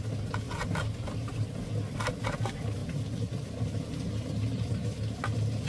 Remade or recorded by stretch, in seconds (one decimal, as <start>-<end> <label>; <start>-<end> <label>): 0.0-5.7 recorded